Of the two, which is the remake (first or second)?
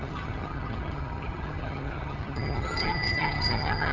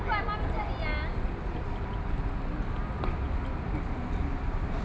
first